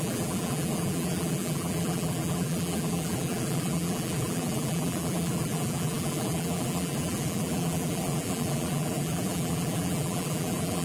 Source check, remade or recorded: remade